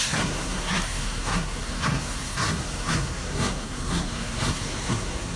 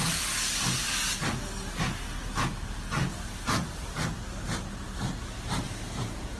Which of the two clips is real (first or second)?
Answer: second